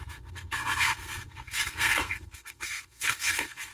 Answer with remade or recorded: remade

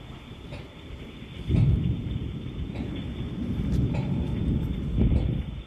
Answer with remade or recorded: recorded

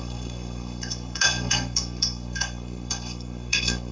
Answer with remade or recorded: remade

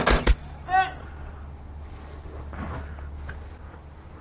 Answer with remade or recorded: recorded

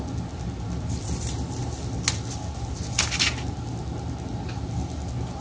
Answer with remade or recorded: recorded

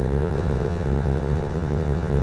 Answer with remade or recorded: remade